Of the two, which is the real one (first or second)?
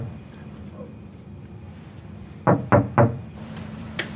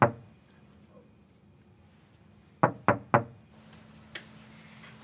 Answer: second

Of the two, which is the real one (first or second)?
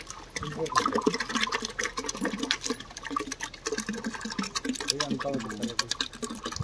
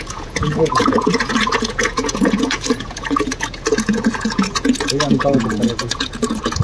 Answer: first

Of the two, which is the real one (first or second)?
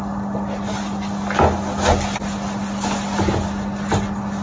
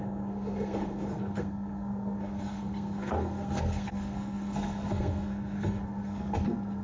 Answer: first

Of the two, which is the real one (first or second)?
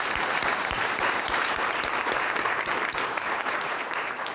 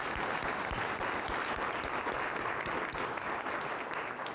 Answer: second